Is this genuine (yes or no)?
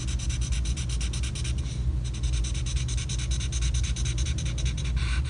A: yes